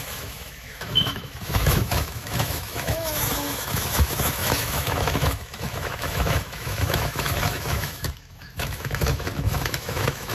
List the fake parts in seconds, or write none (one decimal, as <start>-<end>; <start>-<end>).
0.0-10.3